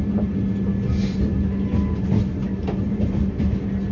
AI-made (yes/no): no